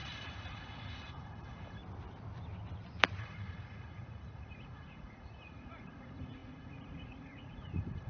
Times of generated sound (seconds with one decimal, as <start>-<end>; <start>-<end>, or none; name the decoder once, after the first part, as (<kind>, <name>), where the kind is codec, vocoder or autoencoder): 0.0-1.8 (vocoder, Vocos); 3.2-8.1